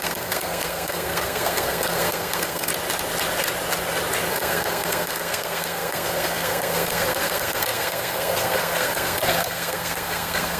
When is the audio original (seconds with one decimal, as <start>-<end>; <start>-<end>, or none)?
2.7-4.3